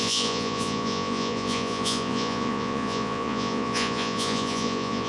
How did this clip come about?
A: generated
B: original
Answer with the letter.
A